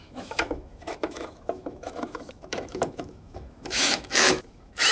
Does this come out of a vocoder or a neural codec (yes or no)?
yes